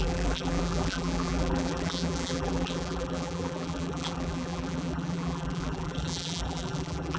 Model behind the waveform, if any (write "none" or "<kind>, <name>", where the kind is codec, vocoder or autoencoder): vocoder, BigVGAN v2